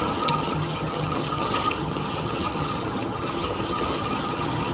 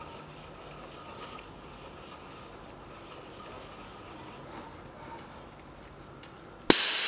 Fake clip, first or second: first